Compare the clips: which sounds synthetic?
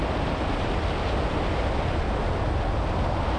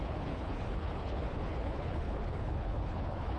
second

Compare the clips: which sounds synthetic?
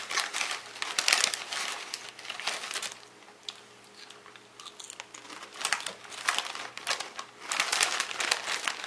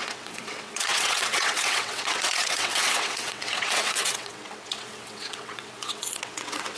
second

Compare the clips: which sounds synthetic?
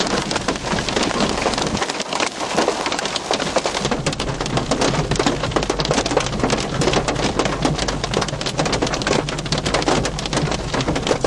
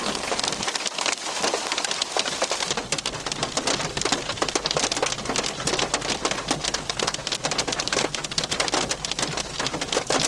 second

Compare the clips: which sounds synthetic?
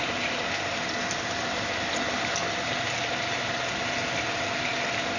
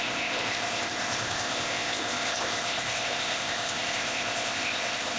second